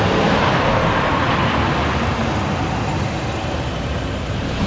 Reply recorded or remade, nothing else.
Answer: recorded